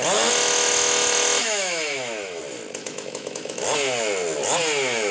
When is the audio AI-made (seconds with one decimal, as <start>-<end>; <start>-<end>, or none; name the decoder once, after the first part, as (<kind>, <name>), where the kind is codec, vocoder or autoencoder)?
1.4-2.4 (autoencoder, DAC-VAE); 2.8-3.6